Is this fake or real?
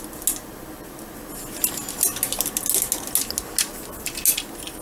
real